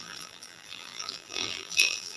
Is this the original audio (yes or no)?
no